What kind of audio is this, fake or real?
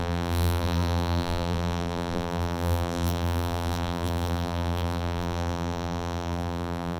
fake